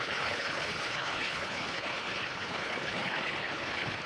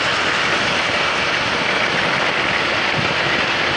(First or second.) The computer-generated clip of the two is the first